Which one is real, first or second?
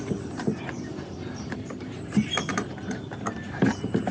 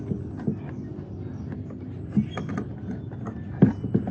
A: second